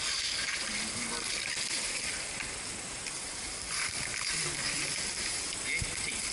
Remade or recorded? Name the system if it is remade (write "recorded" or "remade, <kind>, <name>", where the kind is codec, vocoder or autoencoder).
recorded